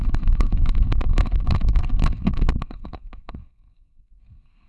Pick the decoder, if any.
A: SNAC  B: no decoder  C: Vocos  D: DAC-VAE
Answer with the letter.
A